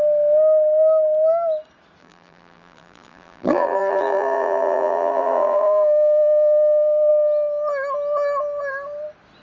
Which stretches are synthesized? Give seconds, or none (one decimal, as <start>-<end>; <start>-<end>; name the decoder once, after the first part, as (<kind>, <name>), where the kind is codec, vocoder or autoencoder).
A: 2.0-7.1 (vocoder, BigVGAN v2)